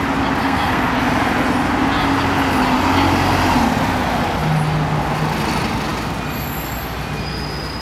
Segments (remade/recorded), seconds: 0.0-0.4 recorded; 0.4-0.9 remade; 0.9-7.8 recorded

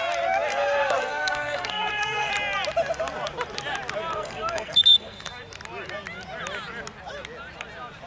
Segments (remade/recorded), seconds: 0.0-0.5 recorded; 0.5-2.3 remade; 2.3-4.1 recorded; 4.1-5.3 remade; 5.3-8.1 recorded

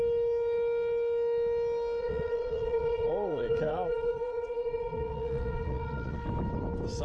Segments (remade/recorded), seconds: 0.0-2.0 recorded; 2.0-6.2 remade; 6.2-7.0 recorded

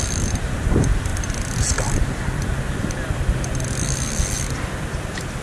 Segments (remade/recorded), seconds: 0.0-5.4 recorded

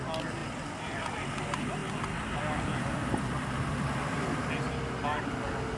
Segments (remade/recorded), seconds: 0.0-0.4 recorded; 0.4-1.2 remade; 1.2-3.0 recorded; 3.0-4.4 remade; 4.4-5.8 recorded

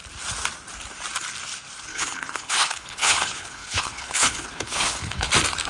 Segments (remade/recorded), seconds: 0.0-1.9 recorded; 1.9-5.3 remade; 5.3-5.7 recorded

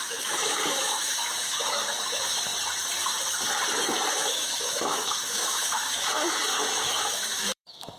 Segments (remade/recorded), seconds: 0.0-2.5 remade; 2.5-4.1 recorded; 4.1-8.0 remade

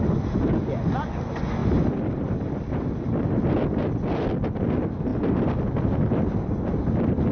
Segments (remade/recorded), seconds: 0.0-7.3 recorded